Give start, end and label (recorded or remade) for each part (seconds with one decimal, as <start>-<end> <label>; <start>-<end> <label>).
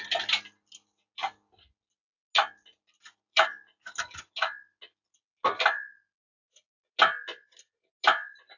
0.0-8.6 recorded